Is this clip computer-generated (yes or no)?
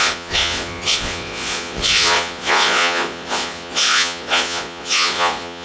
yes